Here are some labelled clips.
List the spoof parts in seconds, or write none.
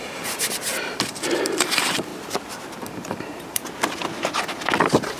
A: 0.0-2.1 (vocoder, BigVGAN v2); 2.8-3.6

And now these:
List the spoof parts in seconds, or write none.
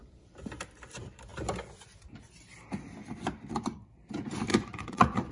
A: 4.5-5.3 (vocoder, Vocos)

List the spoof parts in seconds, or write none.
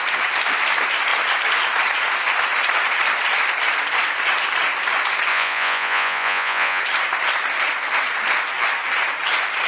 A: 5.3-6.8 (vocoder, Vocos)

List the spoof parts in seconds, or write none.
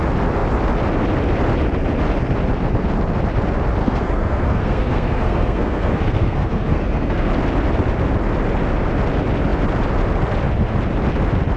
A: 3.8-7.3 (codec, SNAC)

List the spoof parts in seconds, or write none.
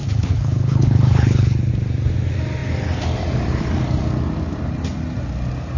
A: 0.0-1.7 (codec, HILCodec)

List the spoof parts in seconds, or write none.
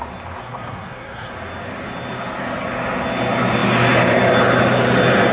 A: 0.4-1.3 (codec, SNAC)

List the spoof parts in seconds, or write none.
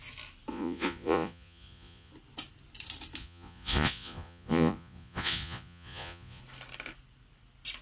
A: 0.5-2.1 (vocoder, Vocos); 3.2-6.4